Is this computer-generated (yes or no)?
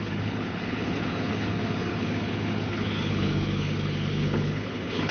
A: yes